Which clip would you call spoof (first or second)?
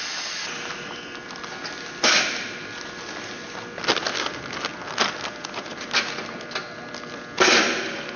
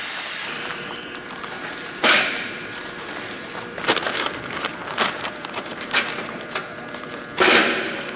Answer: second